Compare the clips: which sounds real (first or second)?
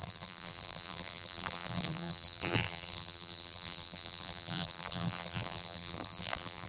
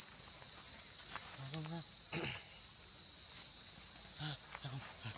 second